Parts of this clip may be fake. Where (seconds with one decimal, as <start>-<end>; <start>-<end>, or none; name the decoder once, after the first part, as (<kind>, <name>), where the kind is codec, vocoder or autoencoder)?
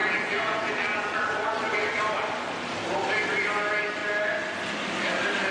0.0-2.0 (vocoder, Vocos)